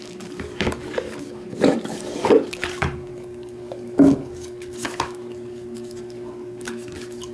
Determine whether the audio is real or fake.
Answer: fake